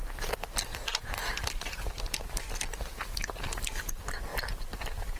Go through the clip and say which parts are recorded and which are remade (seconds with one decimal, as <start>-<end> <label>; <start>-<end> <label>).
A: 0.0-5.2 recorded